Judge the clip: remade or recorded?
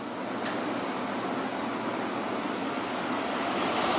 recorded